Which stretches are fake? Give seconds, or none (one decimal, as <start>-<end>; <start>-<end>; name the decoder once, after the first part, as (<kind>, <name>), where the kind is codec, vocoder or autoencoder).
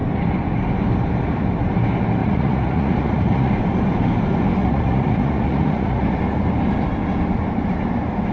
2.2-3.5 (vocoder, Vocos); 4.6-6.2